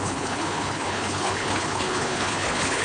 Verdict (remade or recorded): remade